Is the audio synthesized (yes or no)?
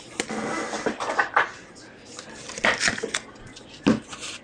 no